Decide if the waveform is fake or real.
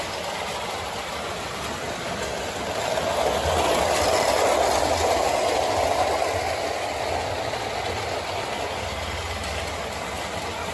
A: real